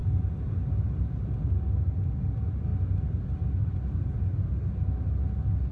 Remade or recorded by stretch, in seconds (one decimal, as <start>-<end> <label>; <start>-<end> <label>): 0.0-5.7 recorded